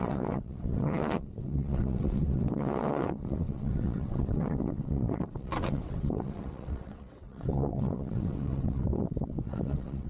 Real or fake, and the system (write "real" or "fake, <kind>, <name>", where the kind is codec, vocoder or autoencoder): fake, vocoder, WaveNeXt